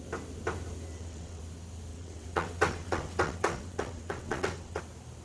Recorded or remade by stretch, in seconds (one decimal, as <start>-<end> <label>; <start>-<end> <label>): 0.0-0.9 recorded; 0.9-1.4 remade; 1.4-1.9 recorded; 1.9-4.8 remade; 4.8-5.2 recorded